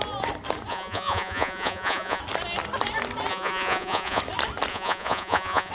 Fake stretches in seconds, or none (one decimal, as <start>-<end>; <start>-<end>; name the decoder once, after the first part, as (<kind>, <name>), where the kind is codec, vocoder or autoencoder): 0.7-2.2 (vocoder, Vocos); 3.3-4.2; 4.7-5.7